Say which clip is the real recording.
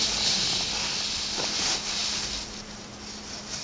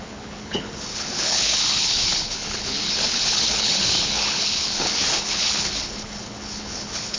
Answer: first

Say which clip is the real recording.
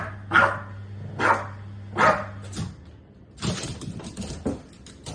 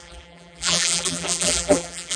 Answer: first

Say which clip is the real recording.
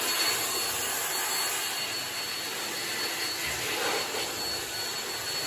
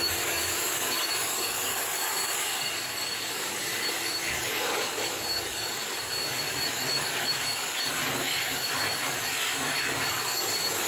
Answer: first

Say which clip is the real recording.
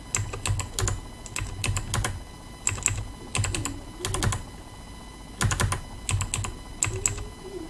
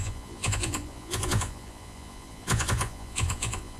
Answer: first